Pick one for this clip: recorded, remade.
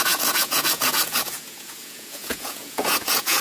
remade